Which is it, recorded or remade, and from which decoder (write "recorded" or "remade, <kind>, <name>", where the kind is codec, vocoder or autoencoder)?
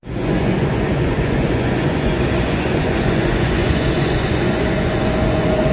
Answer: remade, vocoder, Vocos